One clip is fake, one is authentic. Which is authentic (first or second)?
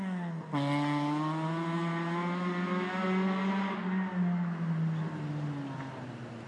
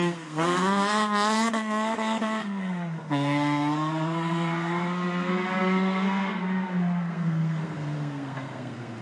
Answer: first